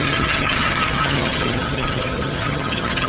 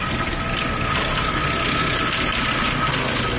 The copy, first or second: first